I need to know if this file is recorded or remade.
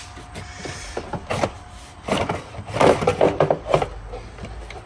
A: recorded